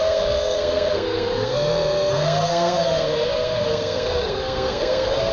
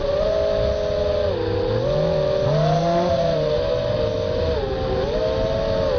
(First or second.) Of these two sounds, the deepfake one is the first